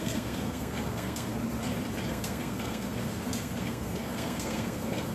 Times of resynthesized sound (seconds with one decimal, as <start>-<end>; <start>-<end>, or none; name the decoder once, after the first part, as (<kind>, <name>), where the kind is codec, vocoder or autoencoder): 0.0-1.3 (codec, SNAC); 2.1-5.1